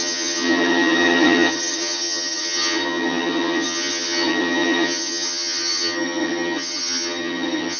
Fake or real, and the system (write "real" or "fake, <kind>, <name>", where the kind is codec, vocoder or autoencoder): fake, vocoder, HiFi-GAN